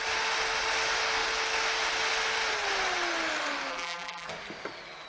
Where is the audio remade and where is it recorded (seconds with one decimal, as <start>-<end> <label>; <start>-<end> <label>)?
0.0-3.7 recorded; 3.7-4.3 remade; 4.3-5.1 recorded

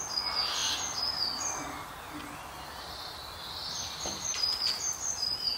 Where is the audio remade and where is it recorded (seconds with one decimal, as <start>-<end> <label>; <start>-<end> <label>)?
0.0-5.6 recorded

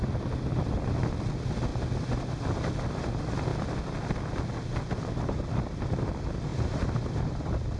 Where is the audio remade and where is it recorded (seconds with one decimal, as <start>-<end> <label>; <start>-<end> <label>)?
0.0-6.5 recorded; 6.5-7.8 remade